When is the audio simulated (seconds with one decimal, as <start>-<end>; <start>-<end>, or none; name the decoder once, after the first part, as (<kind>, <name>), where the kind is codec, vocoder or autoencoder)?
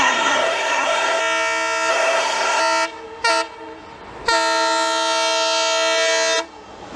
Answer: 0.0-1.2 (codec, SNAC); 1.9-2.6